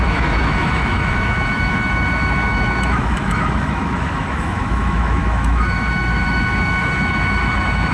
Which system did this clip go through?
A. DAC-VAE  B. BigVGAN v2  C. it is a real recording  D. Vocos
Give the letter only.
A